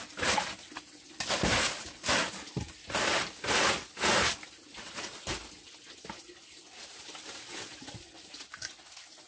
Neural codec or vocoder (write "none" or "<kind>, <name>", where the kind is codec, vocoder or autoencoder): none